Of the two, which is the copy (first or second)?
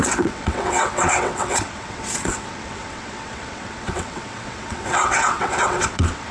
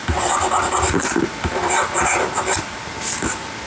first